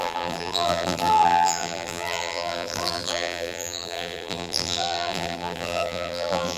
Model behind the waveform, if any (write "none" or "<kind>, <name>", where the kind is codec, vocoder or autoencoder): vocoder, BigVGAN v2